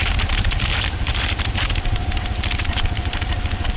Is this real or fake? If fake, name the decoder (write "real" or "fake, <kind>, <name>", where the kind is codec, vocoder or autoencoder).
fake, vocoder, BigVGAN v2